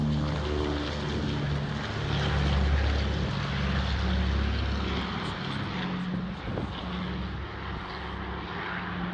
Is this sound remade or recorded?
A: recorded